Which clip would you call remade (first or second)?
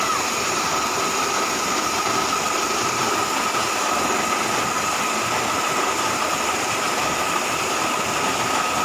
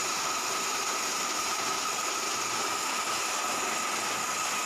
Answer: first